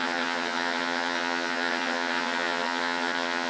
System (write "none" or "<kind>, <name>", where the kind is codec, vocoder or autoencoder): vocoder, HiFi-GAN